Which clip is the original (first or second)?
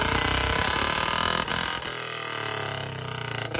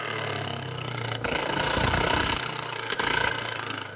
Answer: first